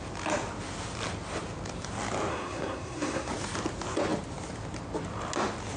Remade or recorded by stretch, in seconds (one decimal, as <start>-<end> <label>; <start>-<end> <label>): 0.0-2.3 recorded; 2.3-3.3 remade; 3.3-5.8 recorded